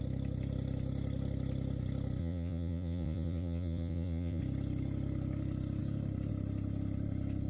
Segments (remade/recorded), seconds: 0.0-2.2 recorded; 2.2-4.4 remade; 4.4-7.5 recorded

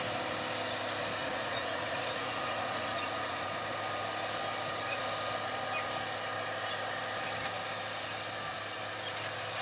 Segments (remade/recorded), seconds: 0.0-1.2 recorded; 1.2-3.5 remade; 3.5-9.6 recorded

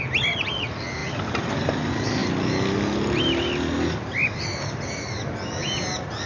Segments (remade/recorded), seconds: 0.0-6.3 recorded

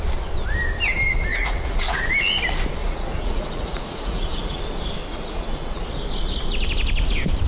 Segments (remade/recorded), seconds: 0.0-1.3 recorded; 1.3-2.0 remade; 2.0-2.8 recorded; 2.8-4.6 remade; 4.6-5.0 recorded; 5.0-5.8 remade; 5.8-7.5 recorded

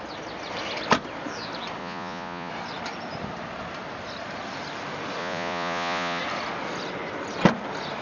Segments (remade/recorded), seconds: 0.0-1.8 recorded; 1.8-2.5 remade; 2.5-5.2 recorded; 5.2-6.2 remade; 6.2-8.0 recorded

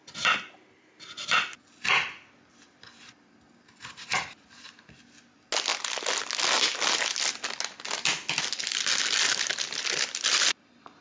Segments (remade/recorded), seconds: 0.0-11.0 recorded

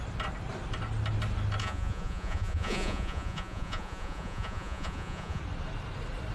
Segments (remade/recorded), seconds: 0.0-1.6 recorded; 1.6-5.4 remade; 5.4-6.3 recorded